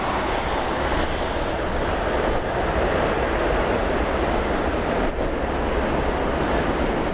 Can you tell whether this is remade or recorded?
recorded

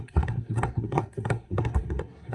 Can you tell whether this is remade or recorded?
remade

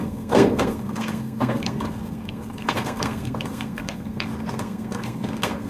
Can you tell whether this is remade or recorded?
remade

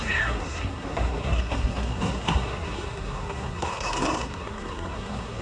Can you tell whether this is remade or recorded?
remade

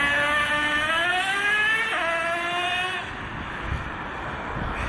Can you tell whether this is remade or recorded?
recorded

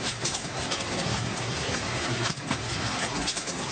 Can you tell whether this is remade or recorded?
remade